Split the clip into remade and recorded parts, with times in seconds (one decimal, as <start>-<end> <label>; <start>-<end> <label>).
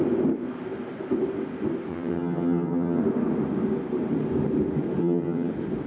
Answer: 0.0-1.9 recorded; 1.9-3.0 remade; 3.0-5.0 recorded; 5.0-5.5 remade; 5.5-5.9 recorded